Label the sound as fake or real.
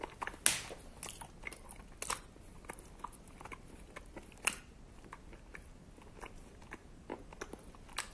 real